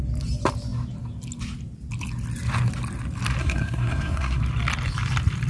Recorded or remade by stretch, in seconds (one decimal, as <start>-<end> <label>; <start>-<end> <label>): 0.0-3.4 recorded; 3.4-4.4 remade; 4.4-5.5 recorded